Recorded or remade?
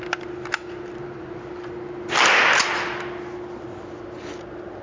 recorded